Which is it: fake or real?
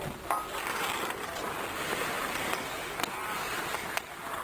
real